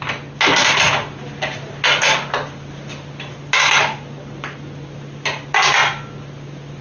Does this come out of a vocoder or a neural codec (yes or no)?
no